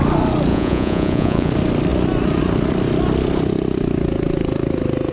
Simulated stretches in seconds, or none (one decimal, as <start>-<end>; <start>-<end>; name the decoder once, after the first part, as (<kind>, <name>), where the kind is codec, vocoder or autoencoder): 0.5-1.5 (vocoder, Vocos)